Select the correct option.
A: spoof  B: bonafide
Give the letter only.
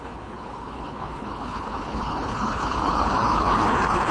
A